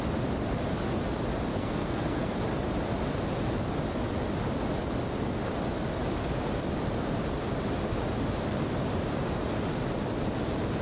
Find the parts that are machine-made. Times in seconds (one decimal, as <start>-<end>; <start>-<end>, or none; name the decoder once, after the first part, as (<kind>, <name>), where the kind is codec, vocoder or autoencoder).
1.5-2.3 (codec, SNAC)